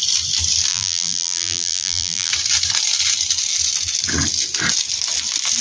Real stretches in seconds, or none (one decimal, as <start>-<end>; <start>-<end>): 0.0-0.7; 2.3-5.6